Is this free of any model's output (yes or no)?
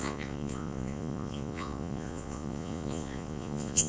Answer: no